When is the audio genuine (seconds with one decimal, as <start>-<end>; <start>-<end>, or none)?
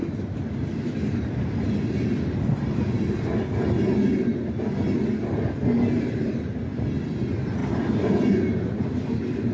0.0-9.5